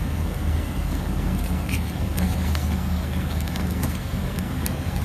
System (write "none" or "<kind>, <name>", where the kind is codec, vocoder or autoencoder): codec, SNAC